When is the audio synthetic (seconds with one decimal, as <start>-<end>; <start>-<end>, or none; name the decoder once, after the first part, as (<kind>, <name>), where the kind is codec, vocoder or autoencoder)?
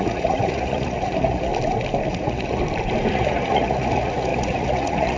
0.0-1.5 (vocoder, Vocos); 2.1-2.6; 3.1-5.2